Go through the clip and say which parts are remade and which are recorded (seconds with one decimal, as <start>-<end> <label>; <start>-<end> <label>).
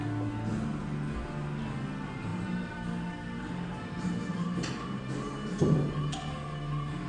0.0-2.3 recorded; 2.3-5.0 remade; 5.0-7.1 recorded